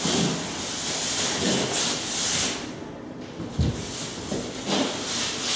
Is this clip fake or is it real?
real